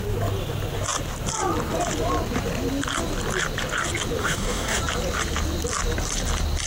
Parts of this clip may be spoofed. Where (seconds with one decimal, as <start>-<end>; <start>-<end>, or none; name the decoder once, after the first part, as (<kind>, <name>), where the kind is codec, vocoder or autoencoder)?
4.2-4.8 (codec, DAC)